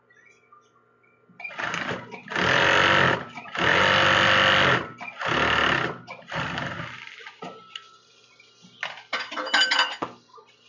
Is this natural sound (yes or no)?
yes